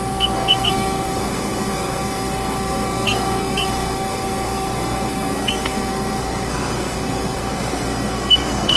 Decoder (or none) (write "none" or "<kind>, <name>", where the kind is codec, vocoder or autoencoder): codec, SNAC